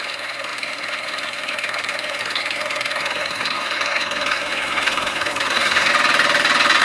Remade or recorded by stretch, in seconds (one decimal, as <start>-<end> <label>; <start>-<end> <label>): 0.0-5.9 remade; 5.9-6.8 recorded